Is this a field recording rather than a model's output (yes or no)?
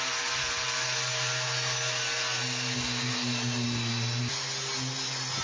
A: yes